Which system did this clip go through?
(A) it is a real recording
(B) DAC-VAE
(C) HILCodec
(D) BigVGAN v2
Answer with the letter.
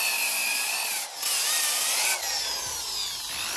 A